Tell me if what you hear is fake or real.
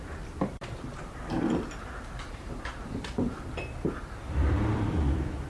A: fake